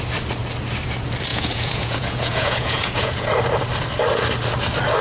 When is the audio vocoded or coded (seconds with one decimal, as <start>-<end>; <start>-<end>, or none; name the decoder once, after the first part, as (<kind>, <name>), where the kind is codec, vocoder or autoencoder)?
1.3-3.3 (vocoder, Vocos)